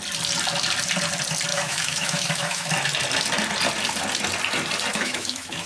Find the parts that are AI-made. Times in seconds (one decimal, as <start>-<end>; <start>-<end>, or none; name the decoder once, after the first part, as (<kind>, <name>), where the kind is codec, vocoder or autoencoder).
1.5-2.7 (autoencoder, DAC-VAE); 4.9-5.7